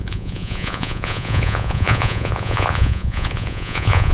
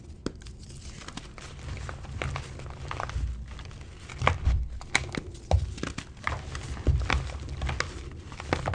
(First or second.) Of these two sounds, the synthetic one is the first